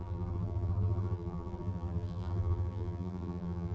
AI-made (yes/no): yes